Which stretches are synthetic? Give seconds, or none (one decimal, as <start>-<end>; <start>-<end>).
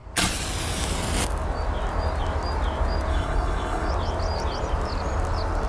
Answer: 3.1-3.9